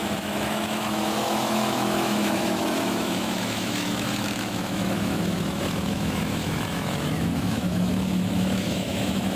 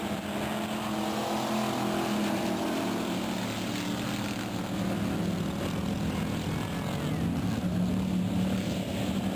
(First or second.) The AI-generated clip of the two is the first